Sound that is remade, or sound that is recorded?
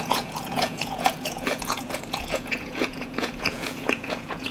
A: remade